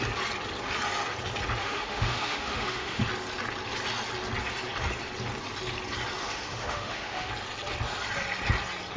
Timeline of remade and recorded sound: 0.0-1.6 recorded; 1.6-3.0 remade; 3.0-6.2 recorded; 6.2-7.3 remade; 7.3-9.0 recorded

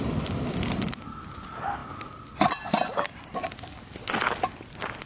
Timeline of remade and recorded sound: 0.0-5.1 recorded

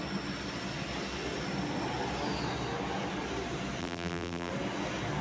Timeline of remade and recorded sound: 0.0-3.8 recorded; 3.8-4.5 remade; 4.5-5.2 recorded

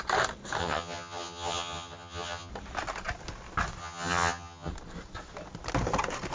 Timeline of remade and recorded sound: 0.0-0.6 recorded; 0.6-2.5 remade; 2.5-3.8 recorded; 3.8-4.7 remade; 4.7-6.3 recorded

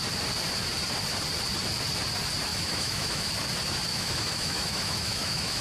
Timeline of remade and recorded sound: 0.0-2.5 recorded; 2.5-3.3 remade; 3.3-3.9 recorded; 3.9-5.6 remade